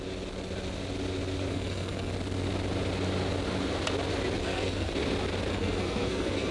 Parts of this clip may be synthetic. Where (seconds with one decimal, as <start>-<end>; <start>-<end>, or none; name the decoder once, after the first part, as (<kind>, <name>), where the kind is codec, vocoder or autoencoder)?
1.5-2.1 (codec, SNAC); 4.4-4.9; 5.5-6.5